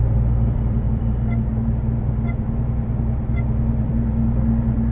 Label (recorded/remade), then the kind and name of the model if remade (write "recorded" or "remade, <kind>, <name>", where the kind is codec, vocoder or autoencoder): remade, vocoder, BigVGAN v2